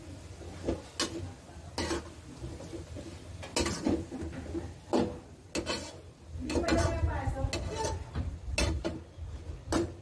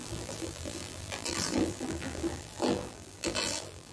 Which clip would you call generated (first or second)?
second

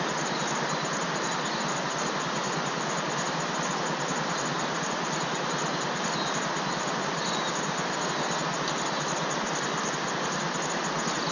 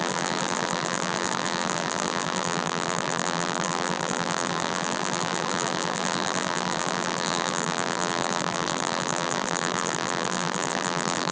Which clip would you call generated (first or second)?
second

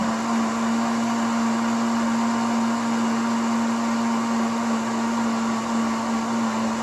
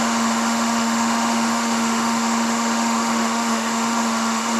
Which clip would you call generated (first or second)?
second